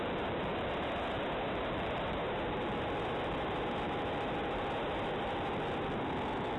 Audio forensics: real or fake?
real